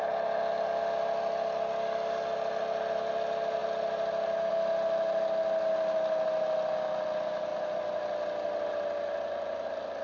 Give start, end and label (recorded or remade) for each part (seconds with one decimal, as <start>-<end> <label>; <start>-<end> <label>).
0.0-10.0 recorded